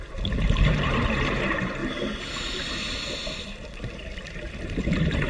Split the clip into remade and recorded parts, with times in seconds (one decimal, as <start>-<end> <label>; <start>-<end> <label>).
0.0-1.8 remade; 1.8-5.3 recorded